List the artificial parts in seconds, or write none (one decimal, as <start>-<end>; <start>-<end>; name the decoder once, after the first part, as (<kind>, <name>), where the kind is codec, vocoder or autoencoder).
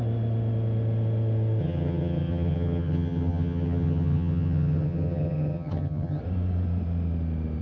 1.6-6.2 (vocoder, HiFi-GAN)